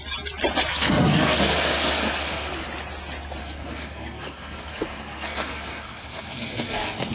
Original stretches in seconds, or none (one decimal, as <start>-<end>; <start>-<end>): 0.0-0.7; 2.5-3.4